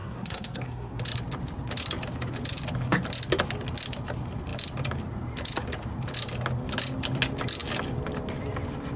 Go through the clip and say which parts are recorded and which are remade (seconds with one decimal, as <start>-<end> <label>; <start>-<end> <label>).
0.0-1.0 remade; 1.0-9.0 recorded